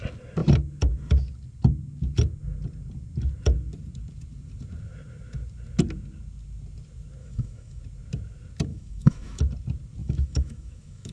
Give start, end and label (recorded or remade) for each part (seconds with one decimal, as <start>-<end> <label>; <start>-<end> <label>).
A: 0.0-7.2 recorded; 7.2-7.8 remade; 7.8-8.7 recorded; 8.7-9.4 remade; 9.4-10.0 recorded; 10.0-11.1 remade